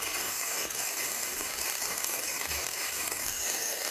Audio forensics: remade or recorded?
remade